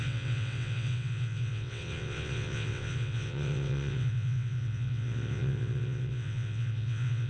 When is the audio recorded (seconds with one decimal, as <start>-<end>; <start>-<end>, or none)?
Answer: none